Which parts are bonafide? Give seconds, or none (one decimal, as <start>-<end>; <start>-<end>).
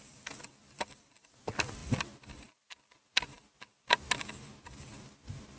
0.0-5.6